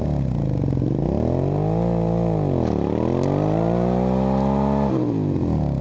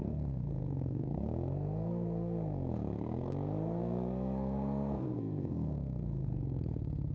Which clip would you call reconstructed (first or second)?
second